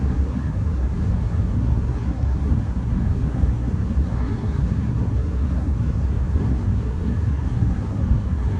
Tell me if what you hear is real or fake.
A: fake